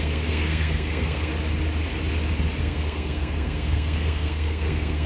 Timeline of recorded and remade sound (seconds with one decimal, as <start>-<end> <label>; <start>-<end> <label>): 0.0-1.3 remade; 1.3-2.6 recorded; 2.6-5.1 remade